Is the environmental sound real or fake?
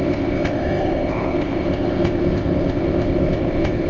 fake